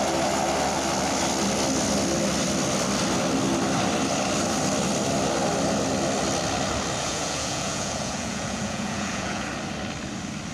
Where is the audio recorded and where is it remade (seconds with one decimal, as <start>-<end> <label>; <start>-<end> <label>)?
0.0-7.0 recorded; 7.0-9.5 remade; 9.5-10.5 recorded